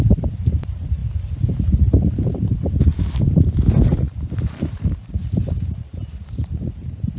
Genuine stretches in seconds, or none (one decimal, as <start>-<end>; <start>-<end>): 1.0-1.7